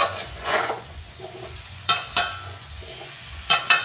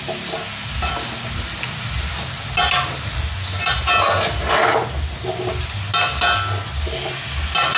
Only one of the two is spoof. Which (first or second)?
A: first